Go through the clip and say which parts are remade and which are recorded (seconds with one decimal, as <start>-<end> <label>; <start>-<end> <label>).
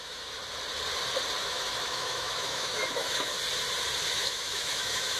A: 0.0-0.4 remade; 0.4-1.4 recorded; 1.4-3.3 remade; 3.3-4.1 recorded; 4.1-5.2 remade